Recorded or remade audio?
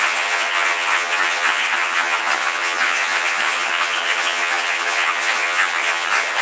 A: remade